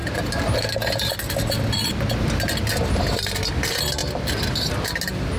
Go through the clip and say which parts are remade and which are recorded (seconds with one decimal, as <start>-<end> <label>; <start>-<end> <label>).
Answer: 0.0-5.4 recorded